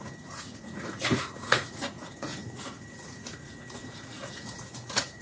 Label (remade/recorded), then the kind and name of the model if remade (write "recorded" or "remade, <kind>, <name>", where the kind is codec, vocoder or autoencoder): remade, vocoder, Vocos